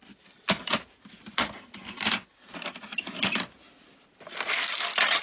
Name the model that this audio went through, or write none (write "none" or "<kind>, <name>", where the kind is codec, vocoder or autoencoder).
none